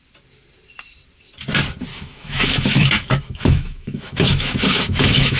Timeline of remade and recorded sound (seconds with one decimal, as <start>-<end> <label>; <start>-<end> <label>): 0.0-1.9 recorded; 1.9-5.4 remade